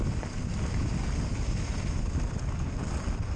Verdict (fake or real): real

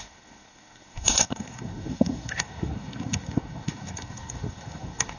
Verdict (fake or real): fake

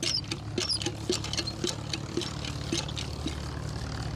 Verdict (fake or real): real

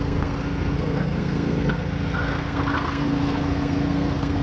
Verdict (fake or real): fake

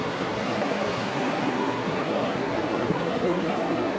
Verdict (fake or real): fake